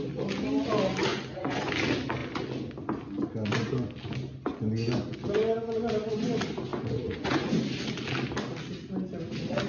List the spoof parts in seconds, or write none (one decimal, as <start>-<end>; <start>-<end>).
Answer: 1.1-1.7; 6.7-7.6